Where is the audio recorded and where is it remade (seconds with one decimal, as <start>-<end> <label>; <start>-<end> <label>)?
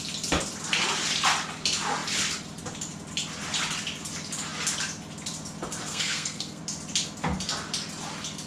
0.0-5.9 recorded; 5.9-6.6 remade; 6.6-8.5 recorded